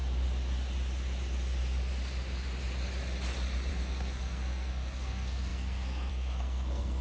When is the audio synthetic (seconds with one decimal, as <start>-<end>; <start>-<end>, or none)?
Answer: 3.7-7.0